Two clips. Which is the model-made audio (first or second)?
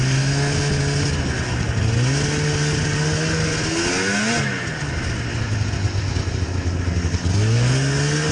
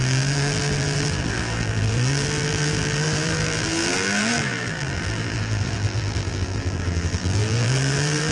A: second